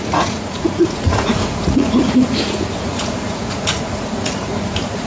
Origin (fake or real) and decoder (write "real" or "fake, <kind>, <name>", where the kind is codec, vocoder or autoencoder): fake, vocoder, Vocos